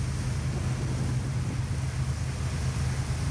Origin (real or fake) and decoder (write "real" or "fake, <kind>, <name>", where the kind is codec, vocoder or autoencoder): real